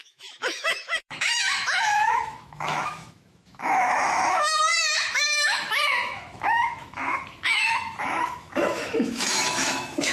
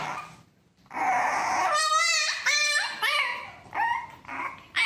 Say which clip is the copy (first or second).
first